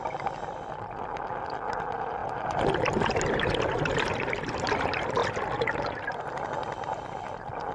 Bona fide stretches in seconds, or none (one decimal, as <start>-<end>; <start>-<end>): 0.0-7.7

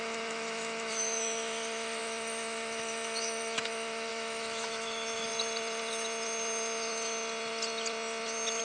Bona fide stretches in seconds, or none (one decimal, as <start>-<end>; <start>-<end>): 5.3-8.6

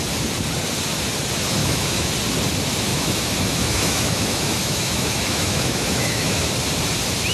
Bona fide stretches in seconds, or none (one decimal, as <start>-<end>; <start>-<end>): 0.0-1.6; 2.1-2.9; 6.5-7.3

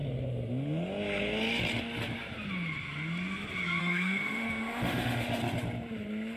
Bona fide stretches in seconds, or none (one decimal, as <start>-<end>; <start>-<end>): 0.0-3.8; 5.4-6.4

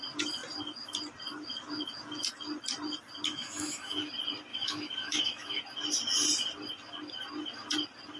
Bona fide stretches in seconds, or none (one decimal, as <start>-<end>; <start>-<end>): 0.0-3.3; 4.1-4.5; 5.6-8.2

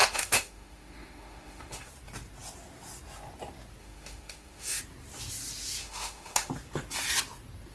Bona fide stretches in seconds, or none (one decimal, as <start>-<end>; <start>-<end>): 1.9-3.8; 4.8-5.8; 6.5-7.7

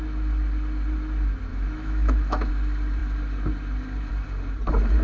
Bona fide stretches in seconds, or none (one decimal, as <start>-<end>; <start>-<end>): 0.0-1.5; 2.5-5.0